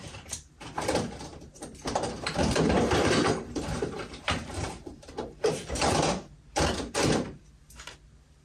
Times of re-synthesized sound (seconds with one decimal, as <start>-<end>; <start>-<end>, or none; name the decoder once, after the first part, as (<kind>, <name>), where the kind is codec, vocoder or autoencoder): 1.3-6.0 (vocoder, BigVGAN v2); 7.0-7.6